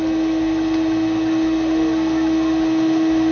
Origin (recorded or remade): recorded